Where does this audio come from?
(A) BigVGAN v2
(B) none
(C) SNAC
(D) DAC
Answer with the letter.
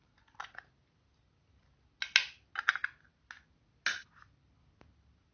B